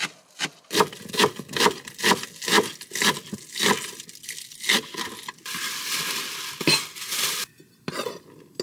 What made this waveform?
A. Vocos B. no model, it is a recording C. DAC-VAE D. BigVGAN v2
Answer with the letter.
B